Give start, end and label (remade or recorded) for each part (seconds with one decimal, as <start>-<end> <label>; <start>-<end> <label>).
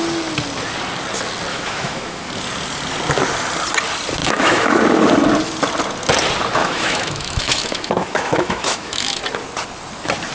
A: 0.0-1.5 recorded; 1.5-2.3 remade; 2.3-4.2 recorded; 4.2-4.8 remade; 4.8-6.6 recorded; 6.6-9.2 remade; 9.2-10.3 recorded